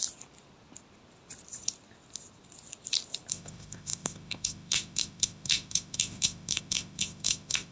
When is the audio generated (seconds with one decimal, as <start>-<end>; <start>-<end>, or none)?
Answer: 3.3-7.7